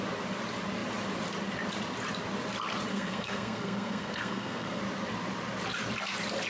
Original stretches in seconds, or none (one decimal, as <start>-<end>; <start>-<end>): 0.0-2.9; 4.8-6.5